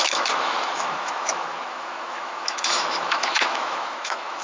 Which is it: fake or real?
fake